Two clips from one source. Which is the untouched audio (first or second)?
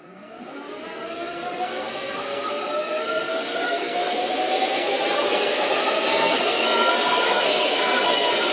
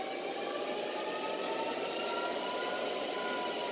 second